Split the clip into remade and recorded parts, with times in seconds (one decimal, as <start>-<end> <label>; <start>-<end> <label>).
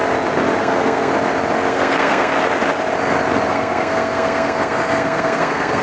0.0-0.6 recorded; 0.6-1.1 remade; 1.1-1.7 recorded; 1.7-2.3 remade; 2.3-3.5 recorded; 3.5-5.8 remade